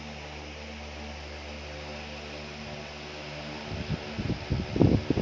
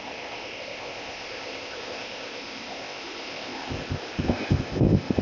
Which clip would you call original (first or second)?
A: first